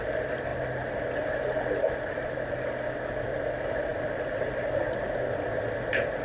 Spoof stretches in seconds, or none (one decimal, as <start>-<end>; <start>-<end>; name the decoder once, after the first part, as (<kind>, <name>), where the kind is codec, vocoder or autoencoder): none